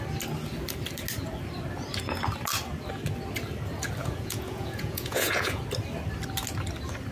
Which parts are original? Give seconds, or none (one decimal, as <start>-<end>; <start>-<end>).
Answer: 0.0-4.0; 5.6-7.1